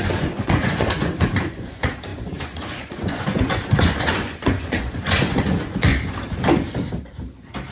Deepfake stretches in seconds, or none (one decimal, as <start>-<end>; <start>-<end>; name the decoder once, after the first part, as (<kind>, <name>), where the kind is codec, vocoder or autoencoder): 0.0-5.9 (vocoder, Vocos)